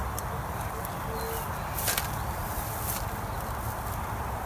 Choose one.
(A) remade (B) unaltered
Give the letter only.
B